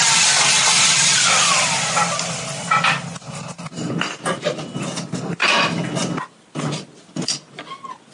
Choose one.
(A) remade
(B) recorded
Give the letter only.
B